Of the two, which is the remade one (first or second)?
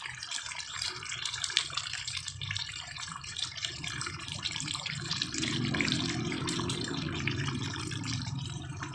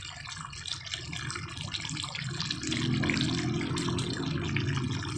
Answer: first